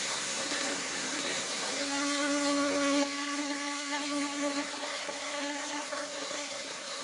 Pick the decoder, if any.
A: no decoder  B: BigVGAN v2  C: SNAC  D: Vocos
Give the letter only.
C